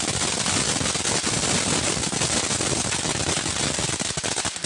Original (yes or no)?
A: yes